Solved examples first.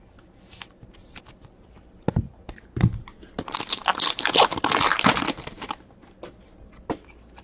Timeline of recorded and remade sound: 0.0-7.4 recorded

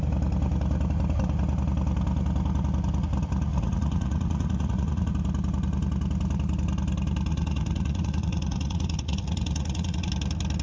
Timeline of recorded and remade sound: 0.0-3.5 recorded; 3.5-5.1 remade; 5.1-7.3 recorded; 7.3-10.1 remade; 10.1-10.6 recorded